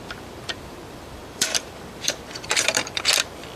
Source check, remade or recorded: remade